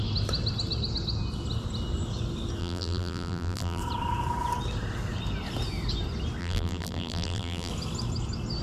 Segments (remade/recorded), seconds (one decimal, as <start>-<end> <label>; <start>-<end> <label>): 0.0-2.6 recorded; 2.6-3.8 remade; 3.8-6.4 recorded; 6.4-7.7 remade; 7.7-8.6 recorded